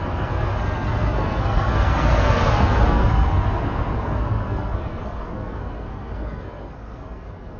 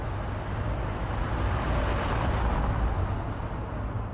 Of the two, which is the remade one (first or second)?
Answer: first